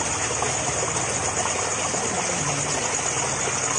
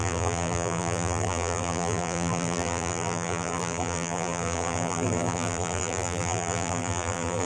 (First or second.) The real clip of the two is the first